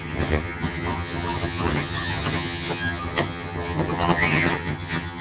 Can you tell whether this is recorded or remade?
remade